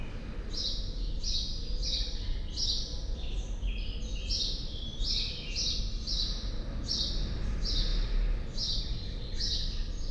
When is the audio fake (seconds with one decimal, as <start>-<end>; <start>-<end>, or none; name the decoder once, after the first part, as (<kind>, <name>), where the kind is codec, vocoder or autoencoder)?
4.2-5.8 (vocoder, BigVGAN v2)